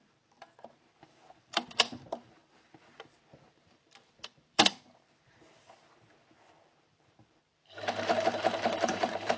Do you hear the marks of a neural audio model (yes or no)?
yes